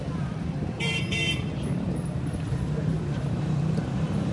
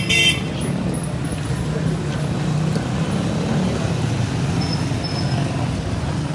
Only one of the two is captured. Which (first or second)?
second